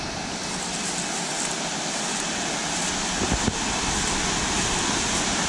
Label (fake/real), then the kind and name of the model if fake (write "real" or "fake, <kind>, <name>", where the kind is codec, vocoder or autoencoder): real